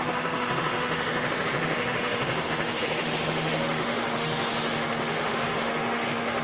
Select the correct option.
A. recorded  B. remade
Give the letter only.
B